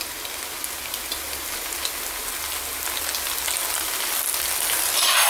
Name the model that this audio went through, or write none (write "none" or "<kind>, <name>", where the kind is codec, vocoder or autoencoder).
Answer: none